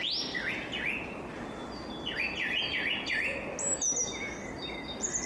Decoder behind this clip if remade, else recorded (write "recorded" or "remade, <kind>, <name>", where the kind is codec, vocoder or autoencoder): recorded